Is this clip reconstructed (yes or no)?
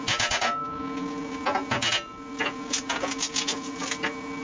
no